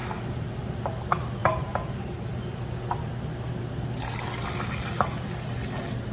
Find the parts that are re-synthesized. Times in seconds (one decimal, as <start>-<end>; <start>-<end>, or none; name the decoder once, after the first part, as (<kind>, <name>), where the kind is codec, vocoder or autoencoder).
0.0-0.9 (vocoder, BigVGAN v2); 1.4-2.6